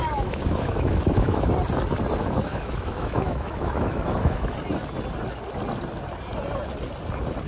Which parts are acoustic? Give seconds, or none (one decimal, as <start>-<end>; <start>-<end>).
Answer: 1.4-2.2; 4.5-7.5